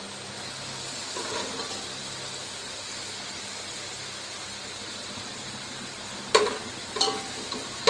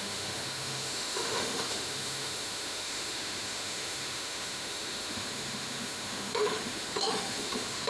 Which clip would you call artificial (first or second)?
second